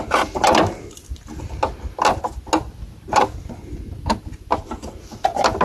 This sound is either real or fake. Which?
real